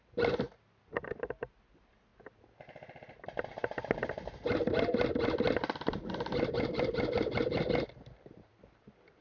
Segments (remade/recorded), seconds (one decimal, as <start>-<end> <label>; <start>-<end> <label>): 0.0-9.2 remade